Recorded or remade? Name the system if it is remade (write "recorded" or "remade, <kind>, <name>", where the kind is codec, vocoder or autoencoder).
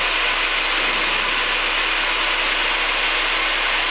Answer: recorded